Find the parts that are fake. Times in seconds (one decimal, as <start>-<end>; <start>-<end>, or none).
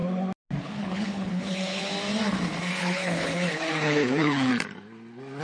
0.6-1.9; 2.8-4.5